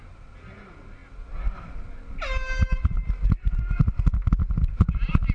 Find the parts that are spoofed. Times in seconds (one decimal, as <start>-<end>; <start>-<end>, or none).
none